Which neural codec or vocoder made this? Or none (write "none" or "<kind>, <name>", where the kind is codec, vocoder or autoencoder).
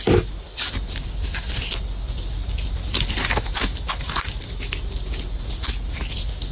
none